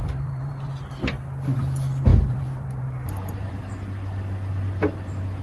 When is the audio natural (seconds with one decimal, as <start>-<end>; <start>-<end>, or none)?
0.9-2.1; 3.5-5.4